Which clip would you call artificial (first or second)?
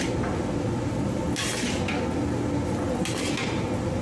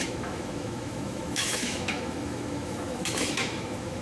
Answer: second